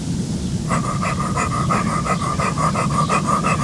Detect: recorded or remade recorded